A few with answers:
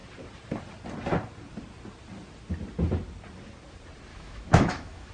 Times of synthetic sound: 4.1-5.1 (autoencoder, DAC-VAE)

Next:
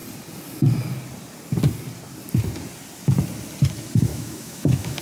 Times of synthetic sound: 4.1-5.0 (autoencoder, DAC-VAE)

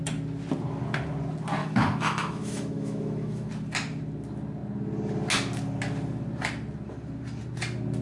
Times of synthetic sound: 1.6-3.5 (autoencoder, DAC-VAE)

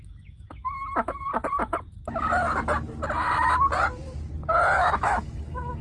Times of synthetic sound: 0.0-1.3 (autoencoder, DAC-VAE); 4.8-5.8